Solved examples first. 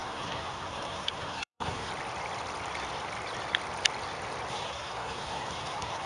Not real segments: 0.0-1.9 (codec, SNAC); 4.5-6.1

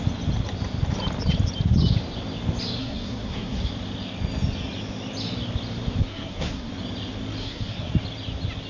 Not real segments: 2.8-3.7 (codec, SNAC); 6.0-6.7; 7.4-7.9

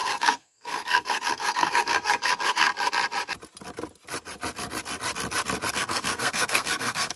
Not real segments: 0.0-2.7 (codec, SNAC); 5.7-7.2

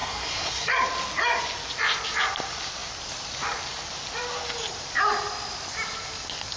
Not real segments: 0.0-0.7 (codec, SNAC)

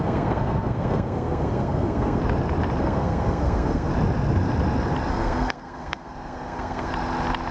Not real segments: 0.0-2.2 (codec, SNAC); 2.8-3.9; 5.1-6.9

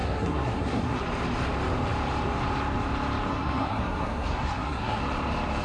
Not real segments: 0.0-1.0 (codec, SNAC); 3.3-5.0

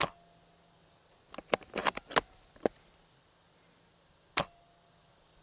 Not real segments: none